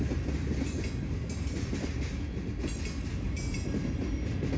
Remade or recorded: recorded